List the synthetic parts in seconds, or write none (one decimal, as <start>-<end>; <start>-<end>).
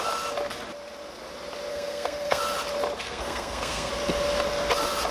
1.7-2.4; 3.0-3.9